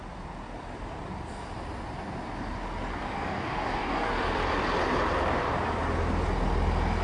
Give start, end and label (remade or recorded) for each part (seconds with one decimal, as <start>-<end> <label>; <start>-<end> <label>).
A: 0.0-2.9 recorded; 2.9-4.1 remade; 4.1-7.0 recorded